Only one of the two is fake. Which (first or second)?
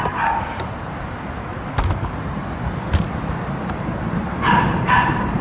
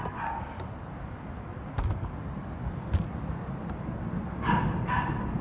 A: first